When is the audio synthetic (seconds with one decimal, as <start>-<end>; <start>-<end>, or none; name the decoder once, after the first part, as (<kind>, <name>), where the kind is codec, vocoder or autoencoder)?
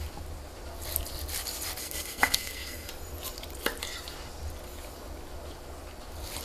1.8-2.9 (codec, SNAC)